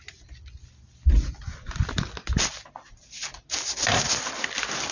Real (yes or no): yes